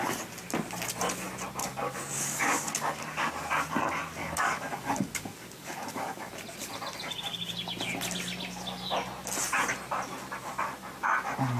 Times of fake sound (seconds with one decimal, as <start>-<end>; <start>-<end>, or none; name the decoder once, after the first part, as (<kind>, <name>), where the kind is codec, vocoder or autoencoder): 1.6-3.3 (codec, DAC); 4.2-6.3